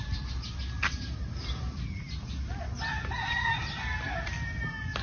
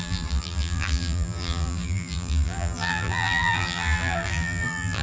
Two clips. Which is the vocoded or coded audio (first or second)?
second